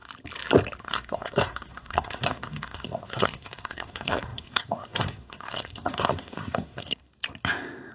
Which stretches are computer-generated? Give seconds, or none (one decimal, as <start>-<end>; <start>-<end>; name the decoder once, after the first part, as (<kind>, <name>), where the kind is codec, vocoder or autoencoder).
0.8-7.1 (codec, SNAC)